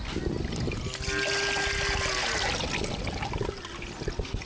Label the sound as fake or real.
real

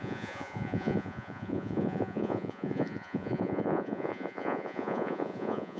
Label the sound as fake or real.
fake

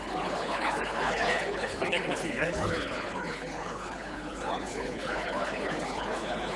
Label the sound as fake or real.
fake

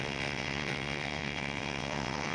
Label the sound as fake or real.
fake